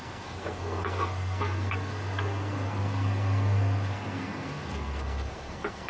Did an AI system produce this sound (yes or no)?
yes